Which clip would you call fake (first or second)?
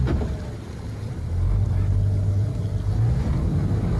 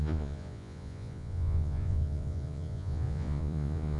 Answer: second